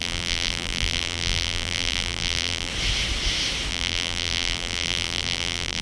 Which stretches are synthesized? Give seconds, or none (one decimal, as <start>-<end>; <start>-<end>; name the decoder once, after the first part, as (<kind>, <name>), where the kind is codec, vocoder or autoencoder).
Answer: 0.0-2.7 (vocoder, BigVGAN v2); 3.7-5.8